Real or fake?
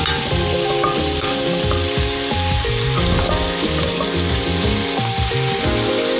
real